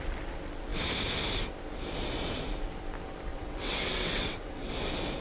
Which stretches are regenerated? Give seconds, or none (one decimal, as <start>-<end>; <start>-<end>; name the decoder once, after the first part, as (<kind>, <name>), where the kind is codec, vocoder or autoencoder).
3.3-4.7 (vocoder, WaveNeXt)